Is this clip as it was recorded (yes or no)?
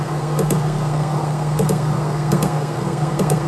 no